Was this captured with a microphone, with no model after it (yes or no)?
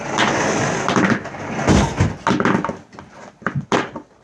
yes